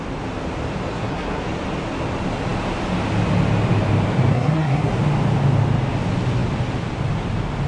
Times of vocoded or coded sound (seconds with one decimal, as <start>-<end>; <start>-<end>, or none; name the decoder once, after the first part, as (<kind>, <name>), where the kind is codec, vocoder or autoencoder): 0.9-1.4 (codec, SNAC); 4.3-4.9